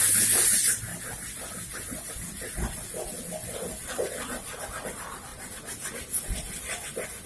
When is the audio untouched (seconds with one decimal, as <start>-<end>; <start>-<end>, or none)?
0.0-7.3

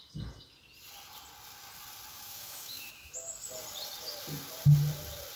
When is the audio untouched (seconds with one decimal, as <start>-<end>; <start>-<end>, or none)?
0.0-2.1; 3.1-5.4

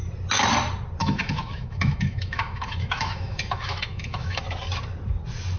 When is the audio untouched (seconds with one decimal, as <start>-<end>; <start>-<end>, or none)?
0.0-1.0; 4.4-5.6